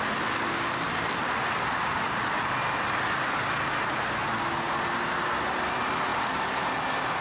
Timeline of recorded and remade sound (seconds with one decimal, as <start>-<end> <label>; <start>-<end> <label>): 0.0-7.2 recorded